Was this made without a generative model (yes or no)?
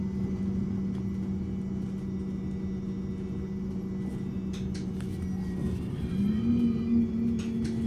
yes